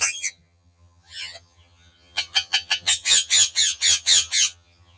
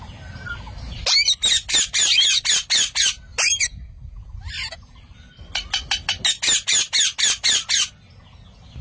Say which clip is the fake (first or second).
first